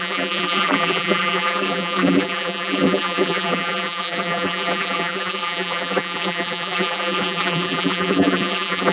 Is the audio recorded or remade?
remade